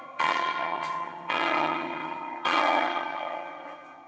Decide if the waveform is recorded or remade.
remade